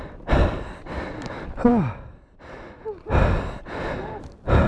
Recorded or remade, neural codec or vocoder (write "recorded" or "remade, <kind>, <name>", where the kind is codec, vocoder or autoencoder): recorded